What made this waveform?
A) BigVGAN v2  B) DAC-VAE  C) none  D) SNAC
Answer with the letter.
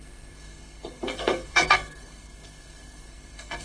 D